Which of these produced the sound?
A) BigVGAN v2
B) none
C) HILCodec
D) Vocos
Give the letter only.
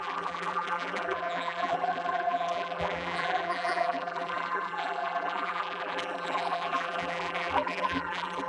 A